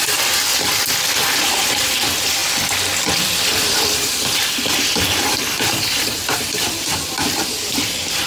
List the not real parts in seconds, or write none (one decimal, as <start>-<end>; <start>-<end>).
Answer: 0.0-0.5; 1.8-2.4; 3.2-8.3